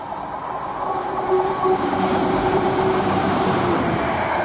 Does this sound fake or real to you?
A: fake